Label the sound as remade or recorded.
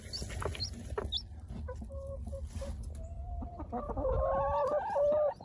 recorded